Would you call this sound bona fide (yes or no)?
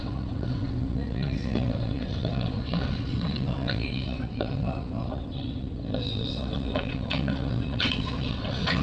no